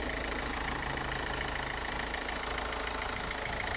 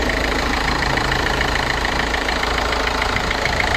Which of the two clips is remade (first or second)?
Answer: second